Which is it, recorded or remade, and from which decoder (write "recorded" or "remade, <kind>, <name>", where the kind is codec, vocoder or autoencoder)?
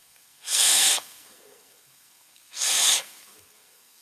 remade, codec, SNAC